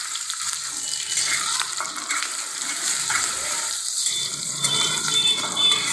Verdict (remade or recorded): remade